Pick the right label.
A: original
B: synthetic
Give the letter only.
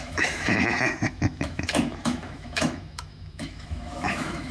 B